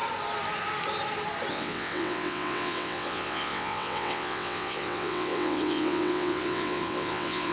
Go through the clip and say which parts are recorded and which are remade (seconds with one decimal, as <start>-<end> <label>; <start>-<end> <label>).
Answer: 0.0-1.5 recorded; 1.5-7.5 remade